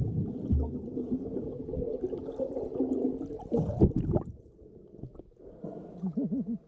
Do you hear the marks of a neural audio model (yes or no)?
no